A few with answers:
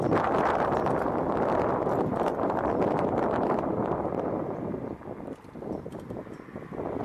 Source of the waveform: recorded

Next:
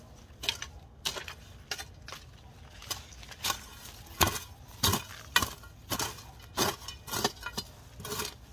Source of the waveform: recorded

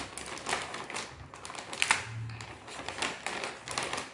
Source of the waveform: recorded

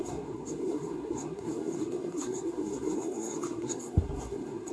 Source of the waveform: remade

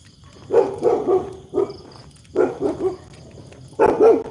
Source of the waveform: recorded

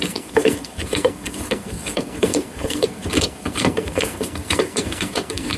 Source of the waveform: remade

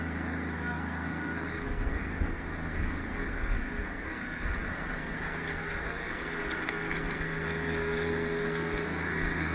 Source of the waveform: remade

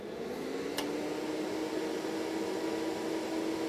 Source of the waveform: recorded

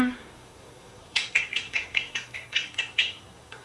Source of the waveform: remade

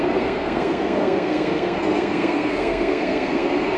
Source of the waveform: remade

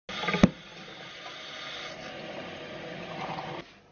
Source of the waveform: recorded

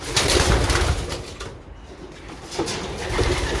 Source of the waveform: recorded